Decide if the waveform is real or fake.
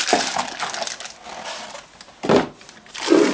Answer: real